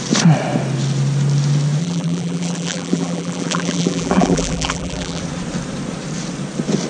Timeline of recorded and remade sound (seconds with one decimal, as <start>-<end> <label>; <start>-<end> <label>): 0.0-1.8 recorded; 1.8-5.2 remade; 5.2-6.9 recorded